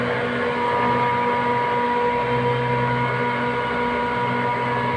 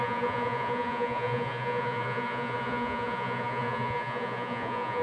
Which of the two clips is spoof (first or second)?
second